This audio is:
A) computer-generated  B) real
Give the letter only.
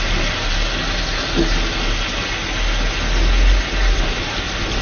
B